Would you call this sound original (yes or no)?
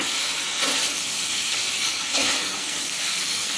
no